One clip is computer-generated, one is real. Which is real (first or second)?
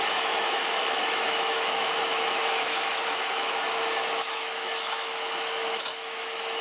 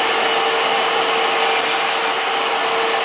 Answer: second